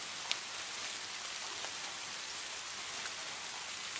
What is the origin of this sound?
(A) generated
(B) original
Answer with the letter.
B